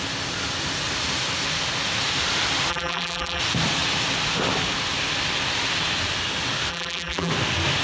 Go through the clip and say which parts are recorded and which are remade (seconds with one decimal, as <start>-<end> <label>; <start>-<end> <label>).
0.0-2.7 recorded; 2.7-3.4 remade; 3.4-6.7 recorded; 6.7-7.3 remade; 7.3-7.8 recorded